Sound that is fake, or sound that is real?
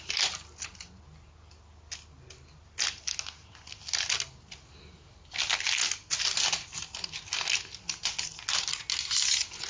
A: real